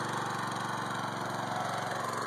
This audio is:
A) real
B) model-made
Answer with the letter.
A